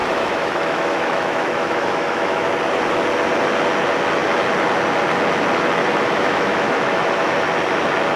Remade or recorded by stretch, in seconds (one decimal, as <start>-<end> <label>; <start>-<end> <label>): 0.0-2.5 remade; 2.5-5.8 recorded; 5.8-7.3 remade; 7.3-8.2 recorded